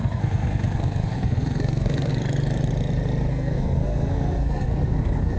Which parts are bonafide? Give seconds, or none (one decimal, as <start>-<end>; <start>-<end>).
2.1-3.3